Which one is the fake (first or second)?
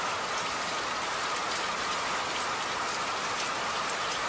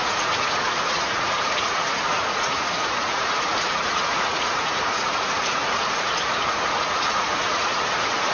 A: second